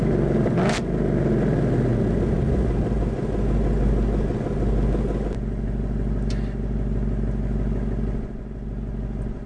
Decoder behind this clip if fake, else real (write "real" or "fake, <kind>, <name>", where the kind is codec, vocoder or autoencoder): real